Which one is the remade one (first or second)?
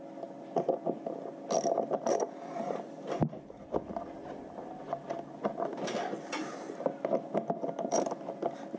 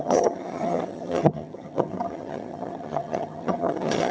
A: second